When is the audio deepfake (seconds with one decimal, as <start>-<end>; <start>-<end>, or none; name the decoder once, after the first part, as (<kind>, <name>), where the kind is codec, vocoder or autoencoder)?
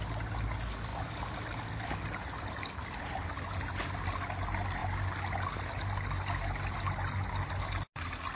none